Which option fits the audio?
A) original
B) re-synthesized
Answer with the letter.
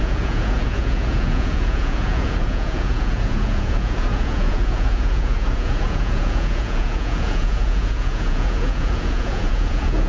B